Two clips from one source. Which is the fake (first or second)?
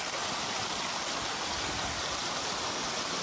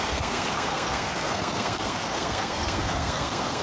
second